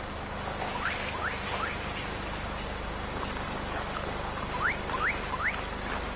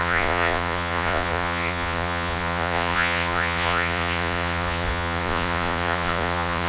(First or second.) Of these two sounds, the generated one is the second